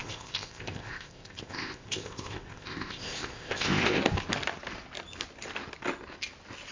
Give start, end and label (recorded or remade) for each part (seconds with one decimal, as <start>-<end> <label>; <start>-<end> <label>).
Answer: 0.0-4.0 remade; 4.0-6.7 recorded